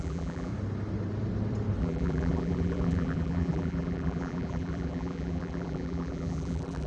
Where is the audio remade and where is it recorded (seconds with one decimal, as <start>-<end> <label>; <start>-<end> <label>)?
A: 0.0-0.5 remade; 0.5-1.8 recorded; 1.8-6.9 remade